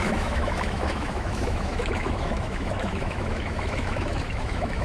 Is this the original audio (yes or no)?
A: no